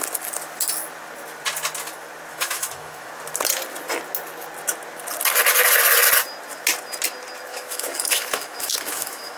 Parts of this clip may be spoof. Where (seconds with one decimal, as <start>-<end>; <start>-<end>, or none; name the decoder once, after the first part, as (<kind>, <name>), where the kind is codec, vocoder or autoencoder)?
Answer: 2.3-3.1 (autoencoder, DAC-VAE); 7.5-9.4